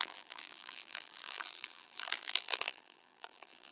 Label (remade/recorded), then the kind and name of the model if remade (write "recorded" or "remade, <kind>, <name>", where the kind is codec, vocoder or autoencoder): remade, vocoder, BigVGAN v2